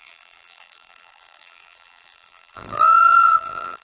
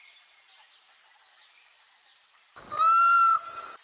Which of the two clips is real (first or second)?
second